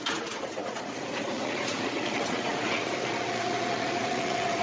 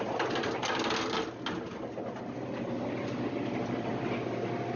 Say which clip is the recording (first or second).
second